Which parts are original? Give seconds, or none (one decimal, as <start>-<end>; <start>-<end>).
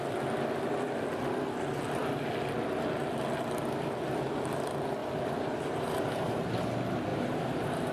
0.0-5.0; 6.6-7.1